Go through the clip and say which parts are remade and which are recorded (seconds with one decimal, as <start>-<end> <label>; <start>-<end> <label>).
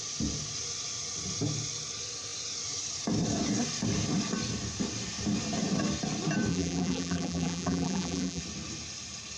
0.0-6.5 recorded; 6.5-8.4 remade; 8.4-9.4 recorded